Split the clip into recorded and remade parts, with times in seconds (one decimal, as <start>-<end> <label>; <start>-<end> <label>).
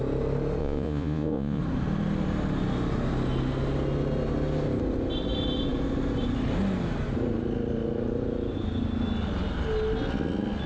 0.0-0.6 recorded; 0.6-1.6 remade; 1.6-10.7 recorded